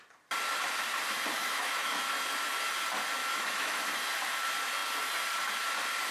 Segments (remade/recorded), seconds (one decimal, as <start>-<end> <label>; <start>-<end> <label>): 0.0-1.4 recorded; 1.4-2.1 remade; 2.1-3.2 recorded; 3.2-3.8 remade; 3.8-6.1 recorded